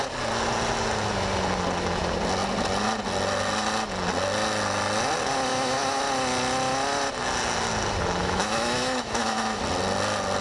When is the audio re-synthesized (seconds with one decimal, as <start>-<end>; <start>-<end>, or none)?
5.5-6.0; 8.2-9.6